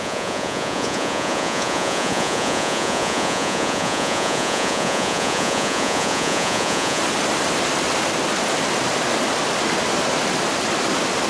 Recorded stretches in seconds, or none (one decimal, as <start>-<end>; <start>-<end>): 7.0-11.3